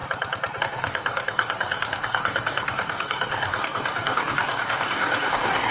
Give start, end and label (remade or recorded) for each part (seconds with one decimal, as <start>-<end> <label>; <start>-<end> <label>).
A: 0.0-0.6 recorded; 0.6-5.7 remade